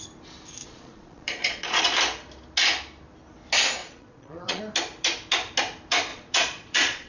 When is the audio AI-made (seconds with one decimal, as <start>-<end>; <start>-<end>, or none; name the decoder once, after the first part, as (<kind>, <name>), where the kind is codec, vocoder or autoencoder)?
0.6-1.8 (vocoder, Vocos); 3.8-4.6; 6.1-7.1